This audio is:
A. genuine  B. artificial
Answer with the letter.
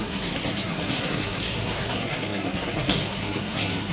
B